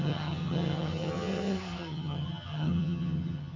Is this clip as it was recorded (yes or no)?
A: no